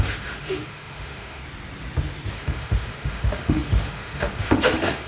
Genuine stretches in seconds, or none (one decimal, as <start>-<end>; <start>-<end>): 1.4-2.3